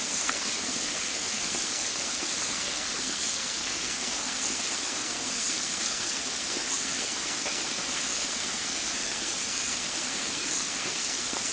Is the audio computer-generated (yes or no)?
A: yes